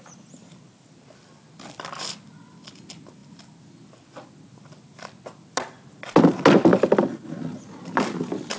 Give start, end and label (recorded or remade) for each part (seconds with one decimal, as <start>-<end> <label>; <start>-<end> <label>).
0.0-8.6 recorded